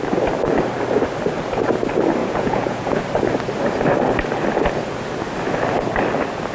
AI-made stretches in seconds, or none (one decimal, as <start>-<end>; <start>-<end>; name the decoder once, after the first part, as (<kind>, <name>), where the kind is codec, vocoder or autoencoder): 2.2-3.0 (vocoder, Vocos)